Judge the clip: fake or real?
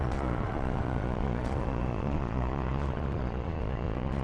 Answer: fake